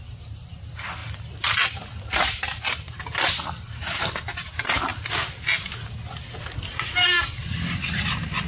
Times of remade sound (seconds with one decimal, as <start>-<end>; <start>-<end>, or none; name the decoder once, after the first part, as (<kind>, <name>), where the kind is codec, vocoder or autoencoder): none

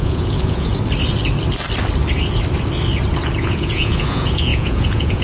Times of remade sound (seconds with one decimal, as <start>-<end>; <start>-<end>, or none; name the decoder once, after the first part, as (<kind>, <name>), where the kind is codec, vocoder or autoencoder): 0.0-0.7 (vocoder, Vocos); 3.4-5.2

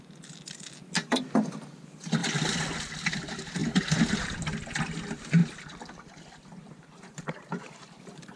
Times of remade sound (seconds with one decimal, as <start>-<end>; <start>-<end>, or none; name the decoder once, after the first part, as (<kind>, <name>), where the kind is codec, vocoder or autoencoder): none

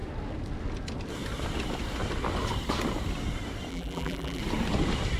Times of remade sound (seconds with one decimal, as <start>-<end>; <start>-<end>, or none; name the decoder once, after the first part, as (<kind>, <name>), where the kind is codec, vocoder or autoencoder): 3.7-4.4 (vocoder, BigVGAN v2)

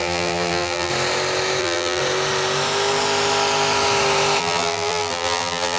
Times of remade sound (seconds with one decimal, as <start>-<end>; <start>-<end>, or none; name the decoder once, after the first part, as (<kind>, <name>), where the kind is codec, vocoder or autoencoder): 0.0-0.9 (vocoder, BigVGAN v2); 1.6-2.0; 4.4-5.8

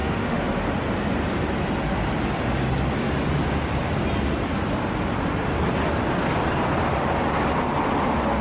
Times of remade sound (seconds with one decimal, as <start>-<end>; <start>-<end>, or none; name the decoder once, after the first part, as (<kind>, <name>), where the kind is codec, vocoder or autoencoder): 0.0-0.6 (autoencoder, DAC-VAE)